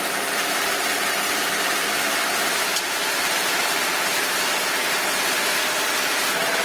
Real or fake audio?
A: real